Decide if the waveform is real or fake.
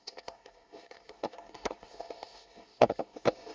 fake